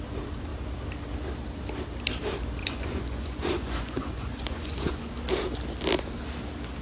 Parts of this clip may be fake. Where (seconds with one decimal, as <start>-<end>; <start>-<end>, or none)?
2.6-5.1